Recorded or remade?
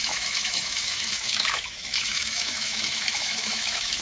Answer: remade